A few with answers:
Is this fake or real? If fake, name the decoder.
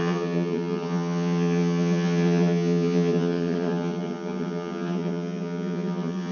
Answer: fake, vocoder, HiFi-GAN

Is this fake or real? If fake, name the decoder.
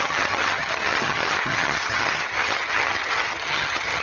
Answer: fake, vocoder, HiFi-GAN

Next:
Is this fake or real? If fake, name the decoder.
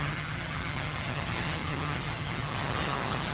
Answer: fake, vocoder, HiFi-GAN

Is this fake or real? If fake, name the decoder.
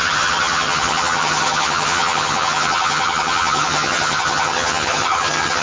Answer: fake, vocoder, HiFi-GAN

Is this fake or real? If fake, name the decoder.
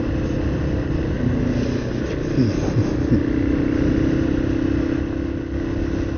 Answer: real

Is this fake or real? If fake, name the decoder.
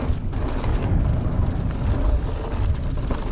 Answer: real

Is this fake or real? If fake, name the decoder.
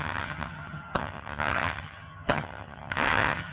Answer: fake, vocoder, HiFi-GAN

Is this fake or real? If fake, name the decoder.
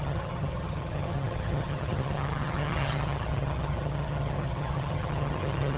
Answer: fake, vocoder, HiFi-GAN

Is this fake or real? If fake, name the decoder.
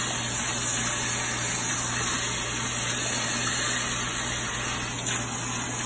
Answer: real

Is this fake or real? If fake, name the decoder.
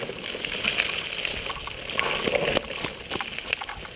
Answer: real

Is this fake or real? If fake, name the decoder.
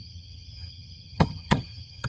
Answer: fake, vocoder, HiFi-GAN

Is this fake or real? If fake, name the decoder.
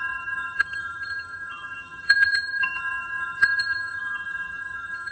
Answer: fake, vocoder, HiFi-GAN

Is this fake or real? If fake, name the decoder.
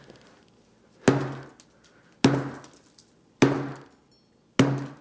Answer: real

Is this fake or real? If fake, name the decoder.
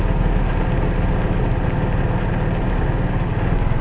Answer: real